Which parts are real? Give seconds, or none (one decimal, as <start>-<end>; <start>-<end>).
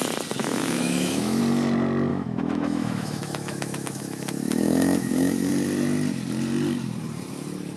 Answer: 0.0-0.4; 1.4-2.1; 5.5-7.8